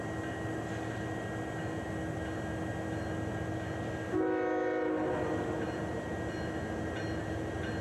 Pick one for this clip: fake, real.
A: real